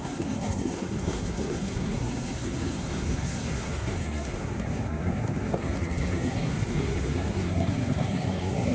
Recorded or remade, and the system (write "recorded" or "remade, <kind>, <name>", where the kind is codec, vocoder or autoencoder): remade, codec, SNAC